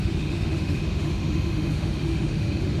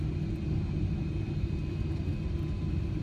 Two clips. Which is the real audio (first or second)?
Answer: second